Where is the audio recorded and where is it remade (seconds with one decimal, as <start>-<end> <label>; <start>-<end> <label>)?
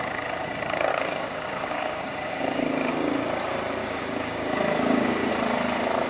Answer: 0.0-0.9 recorded; 0.9-2.9 remade; 2.9-3.8 recorded; 3.8-5.3 remade; 5.3-6.1 recorded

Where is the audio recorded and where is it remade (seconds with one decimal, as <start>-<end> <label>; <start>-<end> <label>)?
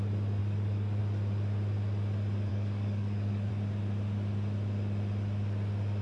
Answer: 0.0-0.4 recorded; 0.4-1.0 remade; 1.0-2.5 recorded; 2.5-3.5 remade; 3.5-6.0 recorded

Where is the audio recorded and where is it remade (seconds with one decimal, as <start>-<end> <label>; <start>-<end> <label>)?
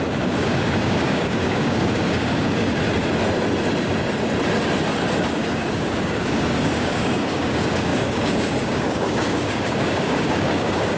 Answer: 0.0-2.6 remade; 2.6-5.3 recorded; 5.3-11.0 remade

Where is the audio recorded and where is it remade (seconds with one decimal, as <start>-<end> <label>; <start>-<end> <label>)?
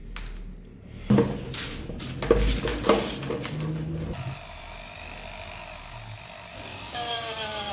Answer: 0.0-6.7 recorded; 6.7-7.7 remade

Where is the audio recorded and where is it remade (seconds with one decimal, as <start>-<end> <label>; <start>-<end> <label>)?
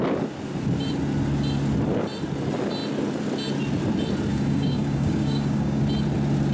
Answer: 0.0-4.3 recorded; 4.3-5.8 remade; 5.8-6.5 recorded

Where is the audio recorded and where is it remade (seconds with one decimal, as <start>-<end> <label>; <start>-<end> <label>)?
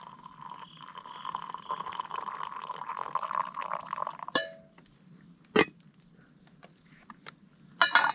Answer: 0.0-8.1 recorded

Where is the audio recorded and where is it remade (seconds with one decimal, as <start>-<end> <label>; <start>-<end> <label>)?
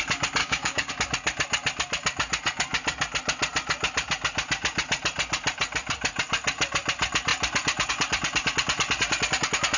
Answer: 0.0-0.4 recorded; 0.4-0.9 remade; 0.9-9.8 recorded